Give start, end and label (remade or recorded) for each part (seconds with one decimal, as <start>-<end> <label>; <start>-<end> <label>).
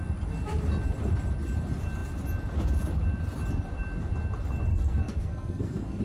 0.0-4.7 recorded; 4.7-6.0 remade